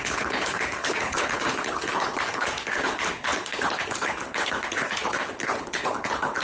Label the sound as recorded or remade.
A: remade